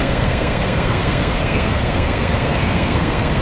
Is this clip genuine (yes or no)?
no